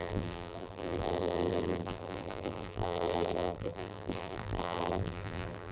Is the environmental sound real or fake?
fake